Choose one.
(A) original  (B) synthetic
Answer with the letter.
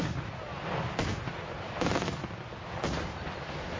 A